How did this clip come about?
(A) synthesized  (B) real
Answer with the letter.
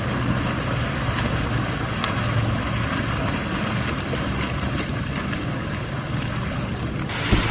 B